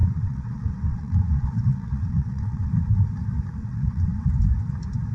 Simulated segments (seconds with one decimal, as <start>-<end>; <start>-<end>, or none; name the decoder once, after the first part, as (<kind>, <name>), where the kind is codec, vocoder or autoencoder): 0.0-2.7 (vocoder, WaveNeXt); 3.6-4.3